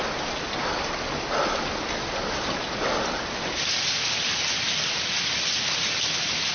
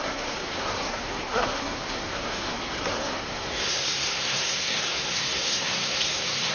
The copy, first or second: second